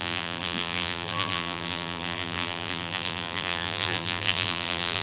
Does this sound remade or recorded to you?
remade